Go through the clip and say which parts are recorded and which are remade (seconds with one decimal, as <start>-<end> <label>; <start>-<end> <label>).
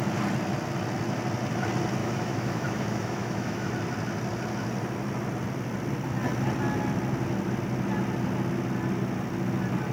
0.0-2.0 recorded; 2.0-3.7 remade; 3.7-9.9 recorded